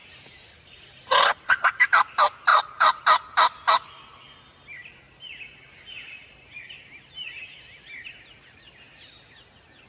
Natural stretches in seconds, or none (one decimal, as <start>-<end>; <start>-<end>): 1.8-2.5; 3.0-9.9